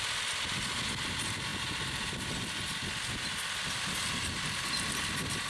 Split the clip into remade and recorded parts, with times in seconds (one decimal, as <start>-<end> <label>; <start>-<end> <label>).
0.0-5.5 recorded